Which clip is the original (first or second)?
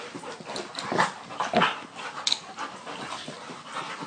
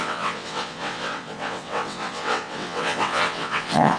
first